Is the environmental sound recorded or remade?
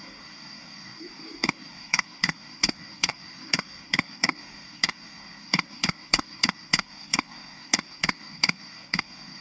remade